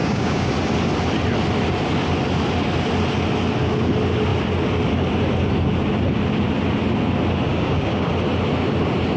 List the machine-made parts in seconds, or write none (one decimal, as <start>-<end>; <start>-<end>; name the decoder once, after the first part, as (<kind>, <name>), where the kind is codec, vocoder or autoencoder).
0.0-0.5 (codec, DAC); 7.5-8.1